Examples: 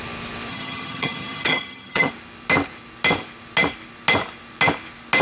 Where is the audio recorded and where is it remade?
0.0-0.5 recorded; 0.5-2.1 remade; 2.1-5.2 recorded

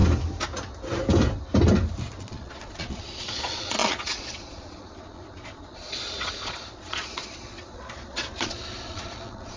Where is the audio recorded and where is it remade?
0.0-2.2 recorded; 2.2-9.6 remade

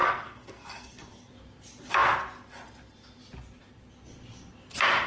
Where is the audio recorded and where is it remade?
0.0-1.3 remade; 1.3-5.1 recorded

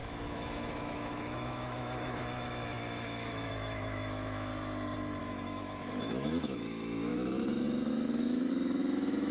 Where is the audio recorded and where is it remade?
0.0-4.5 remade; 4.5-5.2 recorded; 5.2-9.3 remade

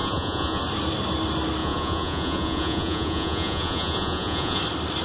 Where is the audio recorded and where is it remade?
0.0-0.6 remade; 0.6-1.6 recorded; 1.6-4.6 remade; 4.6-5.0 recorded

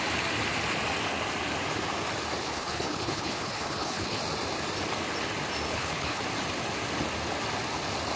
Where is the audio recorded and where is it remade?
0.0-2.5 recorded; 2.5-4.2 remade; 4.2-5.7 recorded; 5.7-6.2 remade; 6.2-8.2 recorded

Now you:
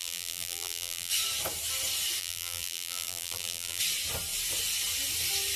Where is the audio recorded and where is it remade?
0.0-1.1 remade; 1.1-2.2 recorded; 2.2-3.8 remade; 3.8-5.6 recorded